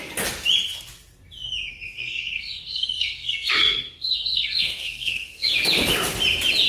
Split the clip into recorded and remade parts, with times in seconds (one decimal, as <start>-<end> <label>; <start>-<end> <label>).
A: 0.0-1.7 recorded; 1.7-5.5 remade; 5.5-6.7 recorded